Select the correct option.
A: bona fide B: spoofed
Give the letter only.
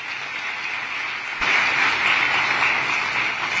A